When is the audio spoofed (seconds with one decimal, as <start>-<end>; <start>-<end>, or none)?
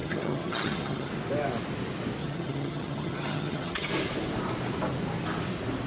0.0-1.1; 2.2-3.9